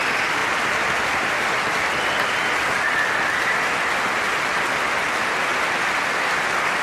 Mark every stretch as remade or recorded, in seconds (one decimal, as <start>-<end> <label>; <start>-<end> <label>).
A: 0.0-6.8 recorded